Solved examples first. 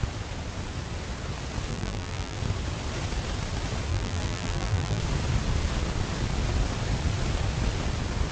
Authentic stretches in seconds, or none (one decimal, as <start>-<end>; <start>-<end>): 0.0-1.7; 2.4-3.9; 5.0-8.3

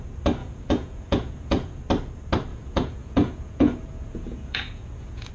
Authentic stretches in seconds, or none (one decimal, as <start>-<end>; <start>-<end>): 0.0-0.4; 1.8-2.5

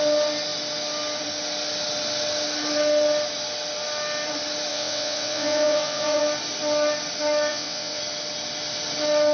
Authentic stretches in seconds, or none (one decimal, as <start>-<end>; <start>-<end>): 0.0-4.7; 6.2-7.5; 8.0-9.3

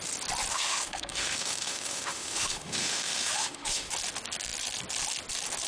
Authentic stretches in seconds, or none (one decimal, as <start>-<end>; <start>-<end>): 0.0-0.5; 3.9-5.7

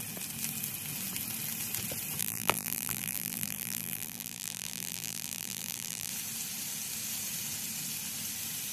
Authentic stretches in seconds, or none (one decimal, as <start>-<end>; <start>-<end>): 0.0-2.2; 6.1-8.7

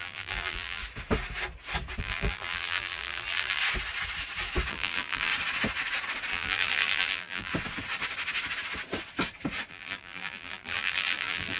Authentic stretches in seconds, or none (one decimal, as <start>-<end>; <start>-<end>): 0.8-2.0; 3.6-4.7; 5.3-6.3; 7.5-9.7

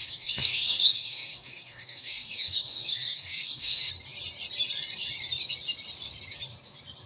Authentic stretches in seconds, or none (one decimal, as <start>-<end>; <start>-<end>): 3.9-7.1

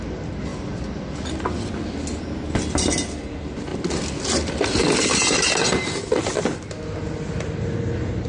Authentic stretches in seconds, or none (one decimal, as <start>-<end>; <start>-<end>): 0.0-8.3